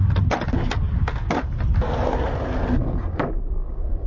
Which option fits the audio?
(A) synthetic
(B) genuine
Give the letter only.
B